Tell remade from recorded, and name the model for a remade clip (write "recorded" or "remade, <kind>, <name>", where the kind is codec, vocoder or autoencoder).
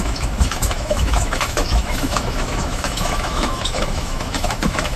remade, autoencoder, DAC-VAE